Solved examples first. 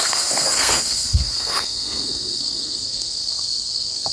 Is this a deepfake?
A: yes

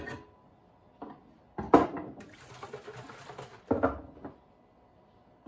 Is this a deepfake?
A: no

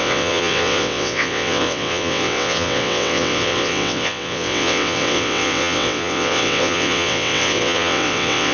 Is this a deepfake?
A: yes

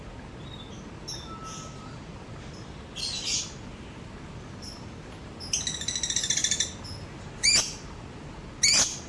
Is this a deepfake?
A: no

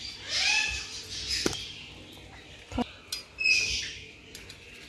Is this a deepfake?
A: no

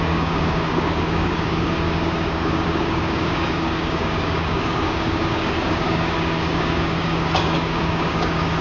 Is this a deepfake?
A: yes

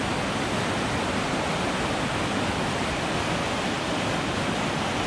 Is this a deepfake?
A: no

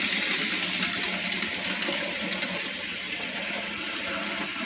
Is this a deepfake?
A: no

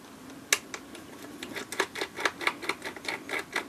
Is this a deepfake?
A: no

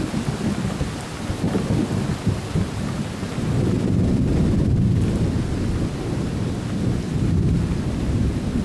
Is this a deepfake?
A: no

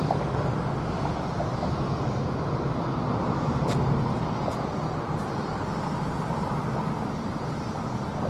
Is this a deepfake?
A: no